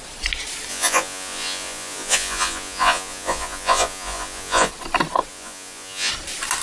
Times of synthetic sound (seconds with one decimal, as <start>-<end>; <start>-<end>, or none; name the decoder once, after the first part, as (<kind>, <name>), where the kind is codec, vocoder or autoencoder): 0.7-4.7 (vocoder, Vocos); 5.3-6.1